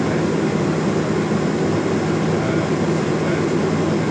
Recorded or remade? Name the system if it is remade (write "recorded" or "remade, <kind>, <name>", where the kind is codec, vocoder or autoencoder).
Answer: recorded